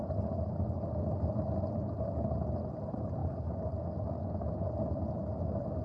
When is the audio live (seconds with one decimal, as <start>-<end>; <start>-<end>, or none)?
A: 0.0-5.8